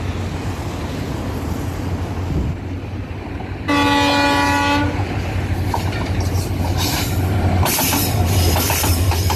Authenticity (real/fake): real